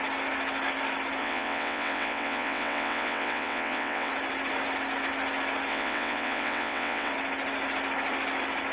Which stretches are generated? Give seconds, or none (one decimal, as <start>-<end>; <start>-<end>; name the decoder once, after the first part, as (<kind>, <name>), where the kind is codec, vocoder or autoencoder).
1.2-4.1 (vocoder, WaveNeXt); 5.7-7.1